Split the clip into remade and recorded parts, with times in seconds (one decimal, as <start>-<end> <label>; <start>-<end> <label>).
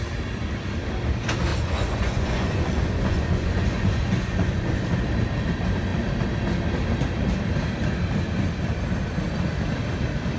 0.0-1.5 recorded; 1.5-4.8 remade; 4.8-10.4 recorded